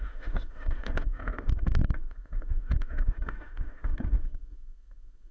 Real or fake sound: fake